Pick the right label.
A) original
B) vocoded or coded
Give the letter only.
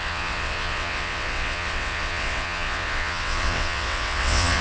B